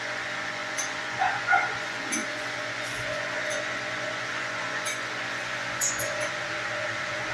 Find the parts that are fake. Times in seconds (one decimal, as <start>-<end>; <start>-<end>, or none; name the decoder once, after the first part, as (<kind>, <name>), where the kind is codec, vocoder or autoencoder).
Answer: 0.0-7.3 (vocoder, Vocos)